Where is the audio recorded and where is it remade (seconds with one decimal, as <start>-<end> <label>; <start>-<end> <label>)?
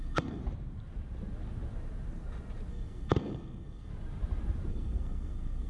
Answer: 0.0-0.4 remade; 0.4-2.7 recorded; 2.7-3.9 remade; 3.9-4.7 recorded; 4.7-5.7 remade